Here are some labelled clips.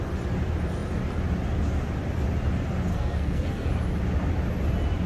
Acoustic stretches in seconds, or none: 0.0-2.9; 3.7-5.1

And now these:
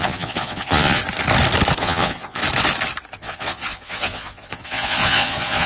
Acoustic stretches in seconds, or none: 1.0-1.8; 2.4-3.1

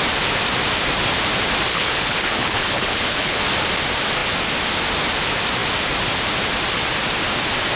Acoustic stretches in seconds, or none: 0.0-1.7; 3.4-7.8

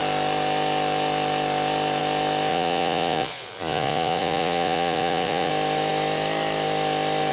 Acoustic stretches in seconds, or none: 0.0-2.5; 5.5-7.3

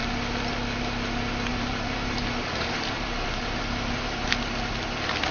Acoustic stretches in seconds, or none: 0.0-1.5; 3.6-5.3

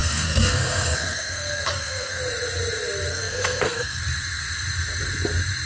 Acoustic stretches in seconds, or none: 2.2-3.1; 4.0-5.7

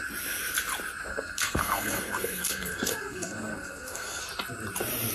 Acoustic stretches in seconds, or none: 0.0-1.1; 4.2-5.1